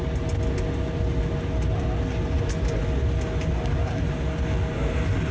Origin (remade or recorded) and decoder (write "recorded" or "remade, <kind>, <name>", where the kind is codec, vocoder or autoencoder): recorded